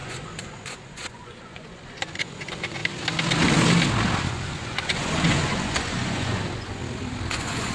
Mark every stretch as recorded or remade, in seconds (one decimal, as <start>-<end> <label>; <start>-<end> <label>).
0.0-2.8 remade; 2.8-4.3 recorded; 4.3-6.8 remade; 6.8-7.3 recorded; 7.3-7.7 remade